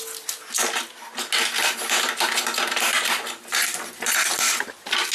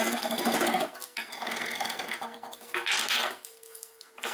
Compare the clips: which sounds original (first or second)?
first